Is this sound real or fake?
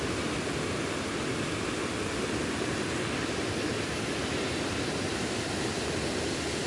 real